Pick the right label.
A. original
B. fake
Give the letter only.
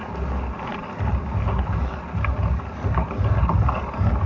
A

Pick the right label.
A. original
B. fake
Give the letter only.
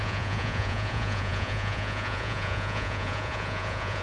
B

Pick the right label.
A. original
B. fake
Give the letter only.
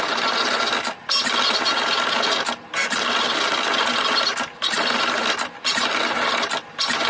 A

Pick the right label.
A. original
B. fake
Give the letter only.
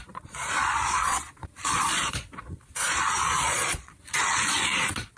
B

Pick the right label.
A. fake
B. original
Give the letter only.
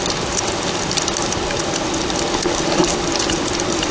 B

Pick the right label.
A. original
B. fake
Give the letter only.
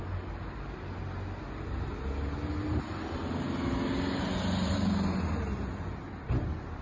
A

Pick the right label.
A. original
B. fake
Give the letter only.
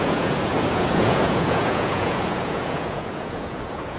B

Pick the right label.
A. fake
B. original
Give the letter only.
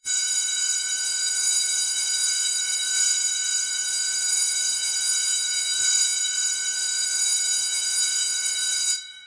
A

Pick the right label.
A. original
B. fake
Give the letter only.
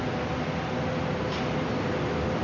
A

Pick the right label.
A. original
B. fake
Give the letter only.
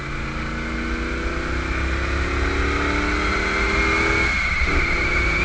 A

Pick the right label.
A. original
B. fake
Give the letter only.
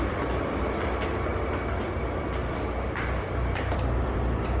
A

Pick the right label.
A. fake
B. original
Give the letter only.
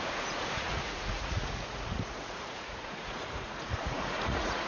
A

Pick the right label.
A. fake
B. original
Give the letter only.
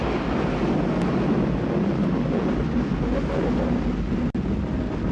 B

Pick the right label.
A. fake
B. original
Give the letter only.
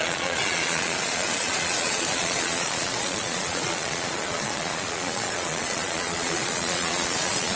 A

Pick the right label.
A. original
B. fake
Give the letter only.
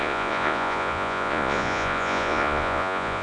B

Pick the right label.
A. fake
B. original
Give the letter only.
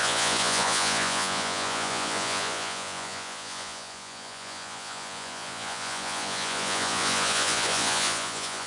A